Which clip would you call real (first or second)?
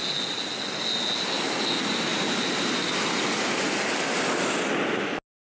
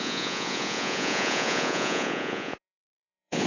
first